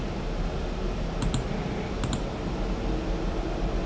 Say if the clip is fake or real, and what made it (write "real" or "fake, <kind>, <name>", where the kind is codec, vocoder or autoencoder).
real